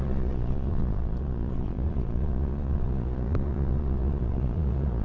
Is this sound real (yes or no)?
no